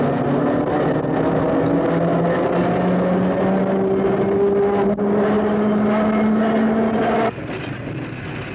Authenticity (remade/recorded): recorded